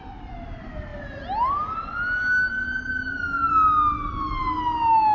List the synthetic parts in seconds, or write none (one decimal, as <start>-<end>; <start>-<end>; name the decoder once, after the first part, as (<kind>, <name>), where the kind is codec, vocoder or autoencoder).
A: none